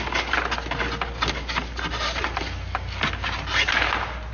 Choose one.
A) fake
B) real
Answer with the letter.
B